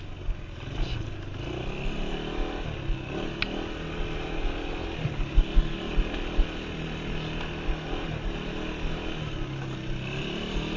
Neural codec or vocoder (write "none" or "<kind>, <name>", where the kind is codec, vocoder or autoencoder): none